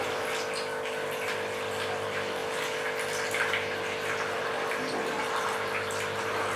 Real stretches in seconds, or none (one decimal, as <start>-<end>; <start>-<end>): 0.0-6.6